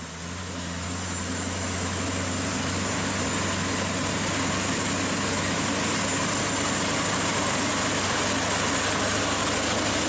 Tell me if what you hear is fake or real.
real